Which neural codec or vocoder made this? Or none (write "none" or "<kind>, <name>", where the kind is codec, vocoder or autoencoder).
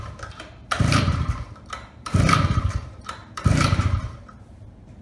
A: vocoder, BigVGAN v2